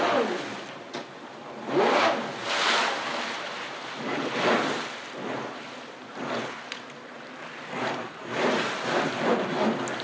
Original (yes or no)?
no